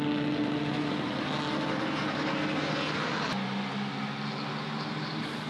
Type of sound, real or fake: real